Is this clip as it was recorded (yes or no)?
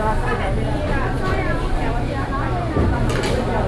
no